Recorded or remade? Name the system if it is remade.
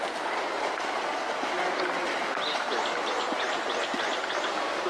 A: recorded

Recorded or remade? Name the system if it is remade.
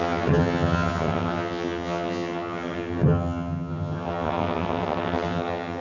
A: remade, vocoder, HiFi-GAN